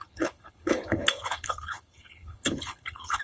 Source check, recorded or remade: remade